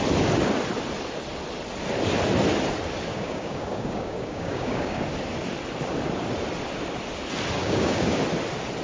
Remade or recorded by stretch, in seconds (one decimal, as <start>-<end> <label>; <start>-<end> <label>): 0.0-3.1 recorded; 3.1-5.0 remade; 5.0-7.6 recorded; 7.6-8.2 remade; 8.2-8.8 recorded